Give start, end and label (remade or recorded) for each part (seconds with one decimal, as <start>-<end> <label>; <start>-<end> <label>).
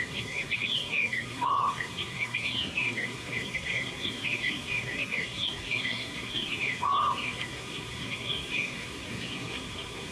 0.0-10.1 remade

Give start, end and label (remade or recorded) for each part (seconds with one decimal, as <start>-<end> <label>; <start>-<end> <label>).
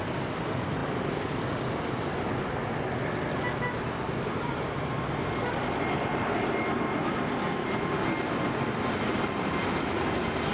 0.0-10.5 recorded